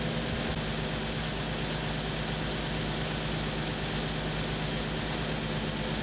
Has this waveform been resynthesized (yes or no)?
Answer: no